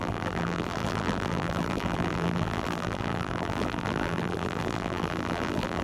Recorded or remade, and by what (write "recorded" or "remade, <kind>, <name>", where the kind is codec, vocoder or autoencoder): remade, vocoder, BigVGAN v2